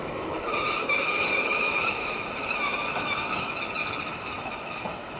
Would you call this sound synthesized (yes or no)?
yes